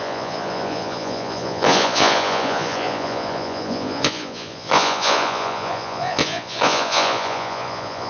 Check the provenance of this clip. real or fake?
fake